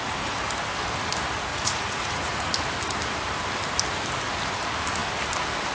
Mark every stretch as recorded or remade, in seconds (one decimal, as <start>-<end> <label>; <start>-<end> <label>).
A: 0.0-1.5 recorded; 1.5-2.5 remade; 2.5-5.7 recorded